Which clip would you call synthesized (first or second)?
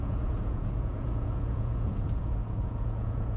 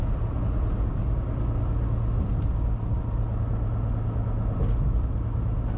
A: first